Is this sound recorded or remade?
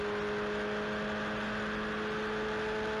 recorded